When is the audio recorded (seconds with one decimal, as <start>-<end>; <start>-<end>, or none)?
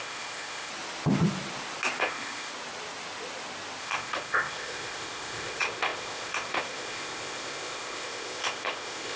0.7-2.0; 2.5-3.8